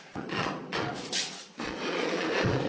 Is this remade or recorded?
remade